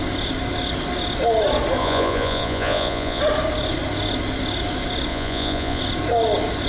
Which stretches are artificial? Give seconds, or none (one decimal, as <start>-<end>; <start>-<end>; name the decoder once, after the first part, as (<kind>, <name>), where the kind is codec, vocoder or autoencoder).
1.8-3.2 (vocoder, Vocos); 5.1-5.8